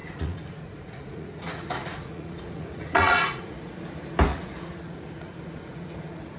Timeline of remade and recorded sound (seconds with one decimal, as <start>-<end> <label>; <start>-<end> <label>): 0.0-3.7 remade; 3.7-4.3 recorded; 4.3-6.4 remade

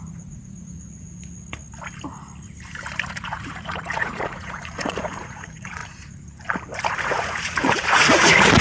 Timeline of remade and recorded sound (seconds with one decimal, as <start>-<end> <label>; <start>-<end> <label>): 0.0-1.1 remade; 1.1-3.1 recorded; 3.1-5.8 remade; 5.8-7.0 recorded; 7.0-8.6 remade

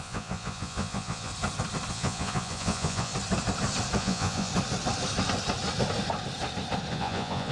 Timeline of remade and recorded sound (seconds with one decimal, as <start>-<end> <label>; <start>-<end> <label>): 0.0-1.3 remade; 1.3-1.9 recorded; 1.9-3.1 remade; 3.1-4.0 recorded; 4.0-4.5 remade; 4.5-6.9 recorded; 6.9-7.5 remade

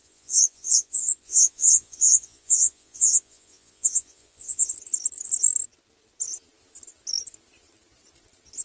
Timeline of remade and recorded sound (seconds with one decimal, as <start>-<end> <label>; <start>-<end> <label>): 0.0-4.7 remade; 4.7-8.6 recorded

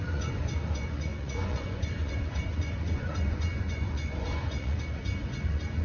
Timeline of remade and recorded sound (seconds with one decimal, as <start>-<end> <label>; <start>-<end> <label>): 0.0-5.8 remade

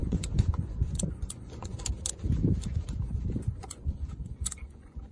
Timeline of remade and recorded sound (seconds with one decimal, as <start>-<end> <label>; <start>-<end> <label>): 0.0-1.8 remade; 1.8-3.5 recorded; 3.5-5.1 remade

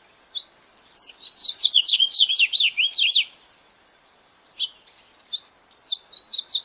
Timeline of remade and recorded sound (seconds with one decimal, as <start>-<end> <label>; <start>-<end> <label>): 0.0-1.4 recorded; 1.4-2.3 remade; 2.3-6.6 recorded

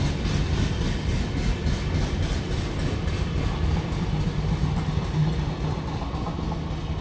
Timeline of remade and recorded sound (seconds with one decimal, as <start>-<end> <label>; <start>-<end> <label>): 0.0-7.0 recorded